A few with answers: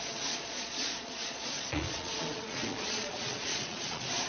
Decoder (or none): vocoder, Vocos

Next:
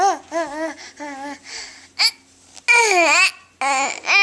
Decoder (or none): none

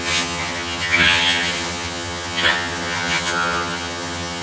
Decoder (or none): vocoder, HiFi-GAN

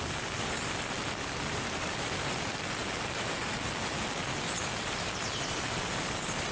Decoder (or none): none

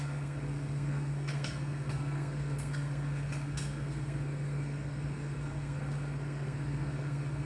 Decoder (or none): codec, SNAC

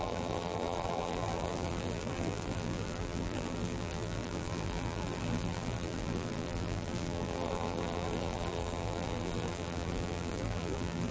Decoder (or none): vocoder, BigVGAN v2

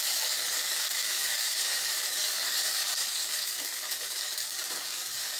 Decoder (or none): codec, DAC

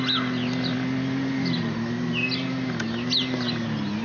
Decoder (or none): none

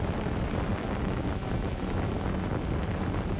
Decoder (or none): none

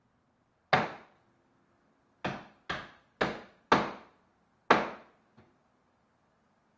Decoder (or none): none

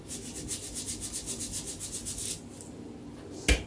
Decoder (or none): none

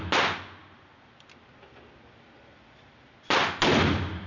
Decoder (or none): none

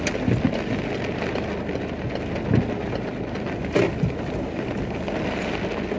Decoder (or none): none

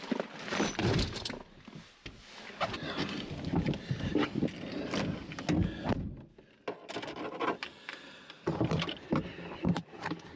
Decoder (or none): none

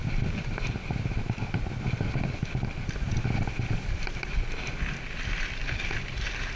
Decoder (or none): none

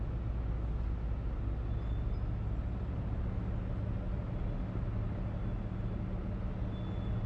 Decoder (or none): none